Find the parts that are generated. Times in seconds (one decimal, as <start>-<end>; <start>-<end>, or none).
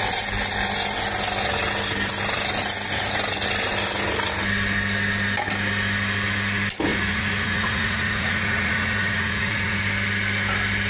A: 6.9-9.8